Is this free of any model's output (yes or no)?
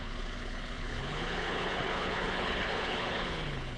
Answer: no